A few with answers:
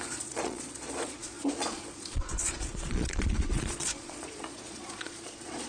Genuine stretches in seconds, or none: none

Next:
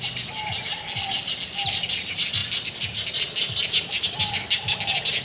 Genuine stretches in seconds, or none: 0.0-5.2

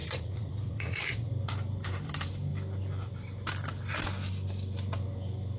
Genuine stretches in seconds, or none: 1.3-5.6

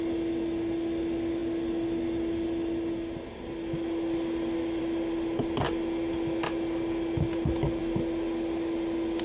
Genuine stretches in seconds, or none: 0.0-9.2